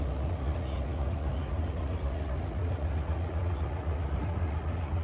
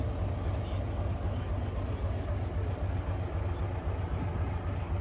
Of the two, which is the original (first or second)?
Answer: second